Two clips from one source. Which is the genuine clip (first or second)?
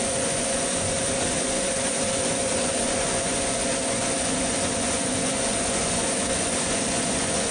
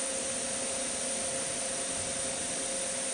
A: second